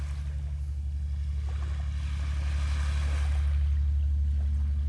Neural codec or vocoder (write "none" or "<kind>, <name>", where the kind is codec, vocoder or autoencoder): none